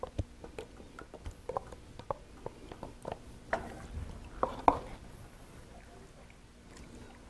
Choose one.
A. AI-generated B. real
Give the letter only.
B